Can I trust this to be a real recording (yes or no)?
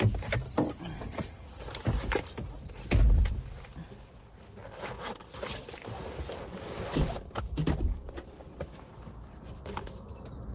yes